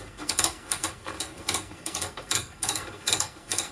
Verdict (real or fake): fake